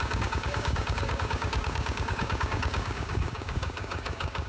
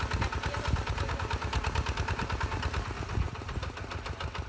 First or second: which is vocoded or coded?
first